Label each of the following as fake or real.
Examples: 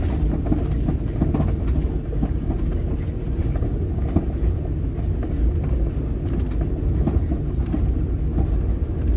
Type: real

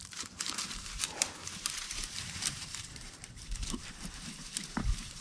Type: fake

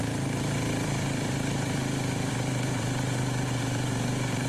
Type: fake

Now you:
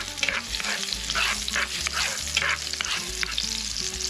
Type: real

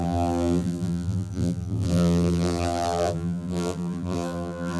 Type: fake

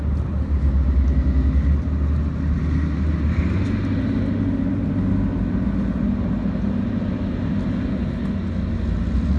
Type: real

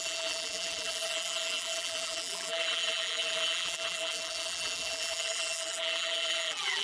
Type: fake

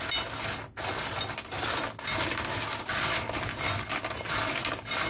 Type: real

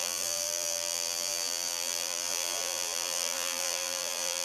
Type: fake